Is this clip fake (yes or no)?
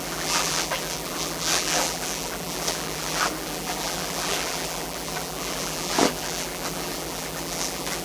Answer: yes